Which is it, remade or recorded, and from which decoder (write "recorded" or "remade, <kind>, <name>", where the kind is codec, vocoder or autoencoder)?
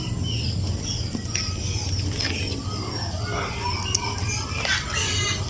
recorded